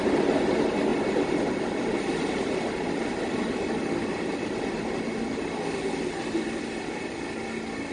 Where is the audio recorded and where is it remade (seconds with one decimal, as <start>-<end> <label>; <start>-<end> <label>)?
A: 0.0-7.9 recorded